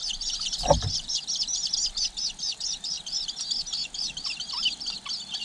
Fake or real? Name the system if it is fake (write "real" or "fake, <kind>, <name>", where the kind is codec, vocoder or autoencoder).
real